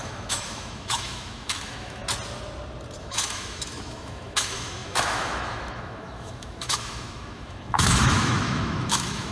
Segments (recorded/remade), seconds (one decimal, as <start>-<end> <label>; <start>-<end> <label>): 0.0-2.0 remade; 2.0-3.0 recorded; 3.0-9.3 remade